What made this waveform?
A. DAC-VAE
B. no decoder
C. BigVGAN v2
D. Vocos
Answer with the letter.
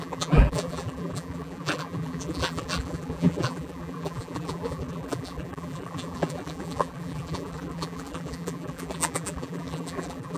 C